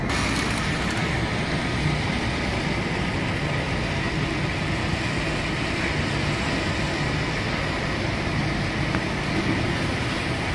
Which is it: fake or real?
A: real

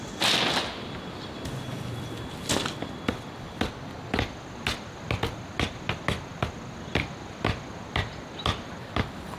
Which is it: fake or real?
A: real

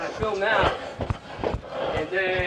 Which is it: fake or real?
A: real